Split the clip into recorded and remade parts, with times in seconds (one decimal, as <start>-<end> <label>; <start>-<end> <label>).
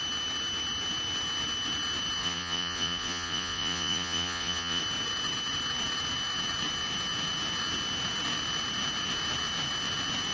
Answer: 0.0-2.2 recorded; 2.2-4.8 remade; 4.8-10.3 recorded